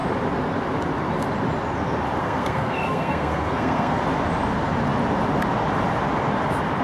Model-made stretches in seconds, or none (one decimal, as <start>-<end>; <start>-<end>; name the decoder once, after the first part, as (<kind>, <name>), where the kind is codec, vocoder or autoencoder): 2.2-4.0 (codec, SNAC)